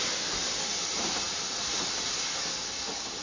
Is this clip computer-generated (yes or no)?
no